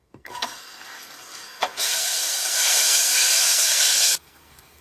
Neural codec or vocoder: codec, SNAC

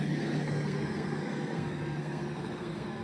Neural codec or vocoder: codec, SNAC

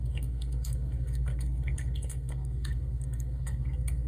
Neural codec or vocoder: codec, SNAC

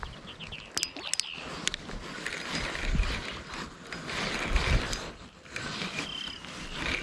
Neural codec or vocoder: none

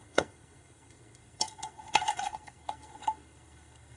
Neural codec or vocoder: codec, SNAC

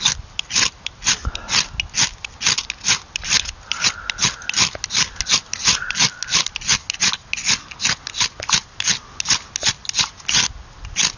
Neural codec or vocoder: none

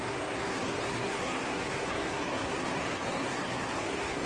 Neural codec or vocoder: codec, SNAC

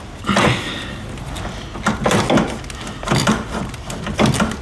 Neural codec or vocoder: none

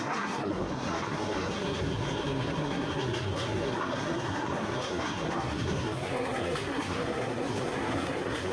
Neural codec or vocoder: codec, SNAC